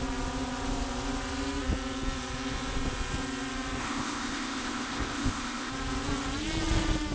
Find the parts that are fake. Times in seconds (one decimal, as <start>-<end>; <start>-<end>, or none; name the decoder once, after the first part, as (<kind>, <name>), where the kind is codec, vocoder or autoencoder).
3.8-5.7 (codec, ZipCodec)